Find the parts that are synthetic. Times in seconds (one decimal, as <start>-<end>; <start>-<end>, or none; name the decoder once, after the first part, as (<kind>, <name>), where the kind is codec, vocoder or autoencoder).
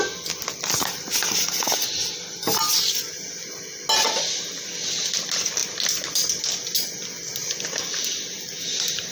5.6-6.4 (vocoder, BigVGAN v2)